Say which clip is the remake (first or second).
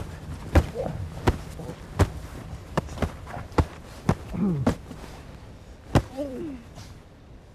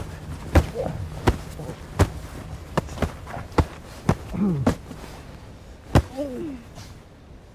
first